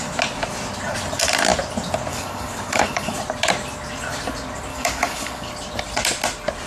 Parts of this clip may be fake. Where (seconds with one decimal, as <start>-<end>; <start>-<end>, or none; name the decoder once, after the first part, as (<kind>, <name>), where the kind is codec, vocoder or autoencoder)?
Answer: 2.1-3.2 (codec, DAC); 4.7-5.5